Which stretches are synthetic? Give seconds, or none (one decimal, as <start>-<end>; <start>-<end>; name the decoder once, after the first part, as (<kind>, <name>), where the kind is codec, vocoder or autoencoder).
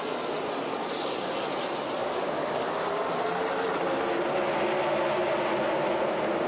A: 2.0-2.6 (codec, DAC)